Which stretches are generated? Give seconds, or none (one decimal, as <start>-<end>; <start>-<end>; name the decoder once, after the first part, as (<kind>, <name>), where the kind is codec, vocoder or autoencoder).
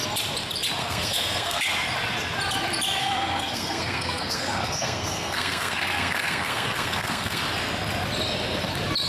0.8-1.6 (codec, SNAC); 3.0-7.4